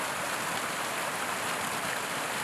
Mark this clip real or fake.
real